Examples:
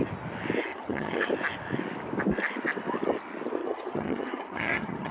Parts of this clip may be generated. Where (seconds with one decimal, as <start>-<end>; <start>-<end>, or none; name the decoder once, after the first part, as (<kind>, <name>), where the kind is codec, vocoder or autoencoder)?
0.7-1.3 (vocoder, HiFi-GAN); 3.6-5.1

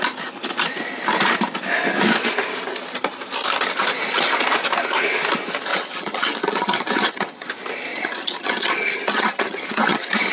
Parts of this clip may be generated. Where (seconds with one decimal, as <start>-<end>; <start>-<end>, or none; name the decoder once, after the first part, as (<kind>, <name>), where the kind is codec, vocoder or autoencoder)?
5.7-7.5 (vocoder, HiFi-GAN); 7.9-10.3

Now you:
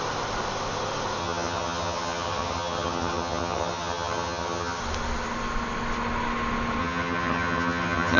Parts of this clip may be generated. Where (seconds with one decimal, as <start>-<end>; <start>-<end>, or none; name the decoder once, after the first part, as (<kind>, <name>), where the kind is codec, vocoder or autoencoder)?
1.2-4.8 (vocoder, HiFi-GAN); 6.8-8.2